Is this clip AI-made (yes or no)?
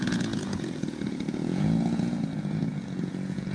yes